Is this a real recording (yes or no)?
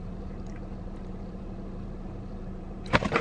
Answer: no